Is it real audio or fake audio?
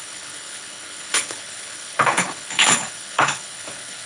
fake